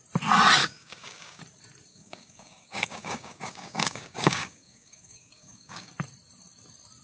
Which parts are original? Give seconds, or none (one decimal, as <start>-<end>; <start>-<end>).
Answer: 0.0-0.6; 1.4-1.9; 5.9-7.0